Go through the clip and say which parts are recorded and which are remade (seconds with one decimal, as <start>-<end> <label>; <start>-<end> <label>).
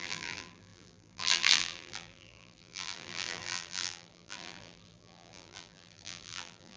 0.0-6.8 remade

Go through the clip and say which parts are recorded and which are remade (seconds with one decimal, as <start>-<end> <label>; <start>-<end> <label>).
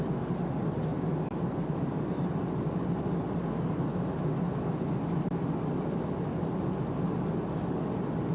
0.0-8.3 recorded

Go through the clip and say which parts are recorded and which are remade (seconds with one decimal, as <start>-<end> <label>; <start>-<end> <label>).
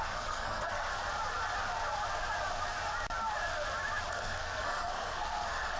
0.0-0.9 remade; 0.9-4.1 recorded; 4.1-5.8 remade